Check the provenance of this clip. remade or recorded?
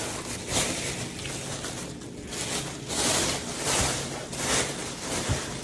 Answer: recorded